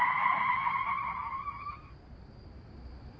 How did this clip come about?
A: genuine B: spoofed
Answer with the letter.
A